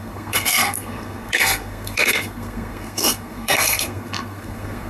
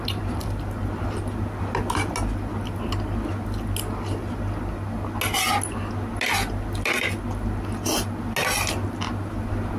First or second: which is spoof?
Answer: first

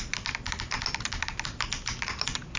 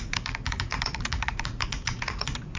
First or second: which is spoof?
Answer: second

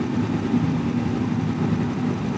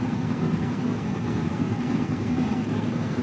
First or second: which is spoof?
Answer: second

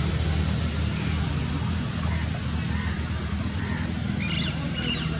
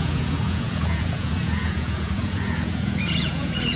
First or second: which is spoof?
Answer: second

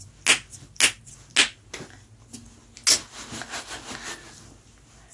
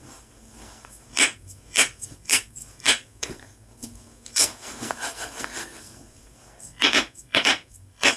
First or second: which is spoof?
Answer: second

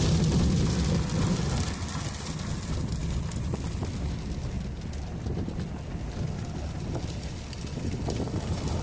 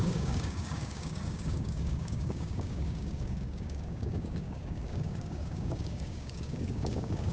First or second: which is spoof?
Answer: second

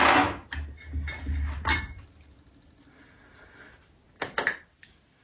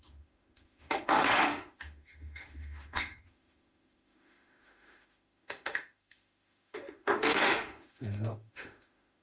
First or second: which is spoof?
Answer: second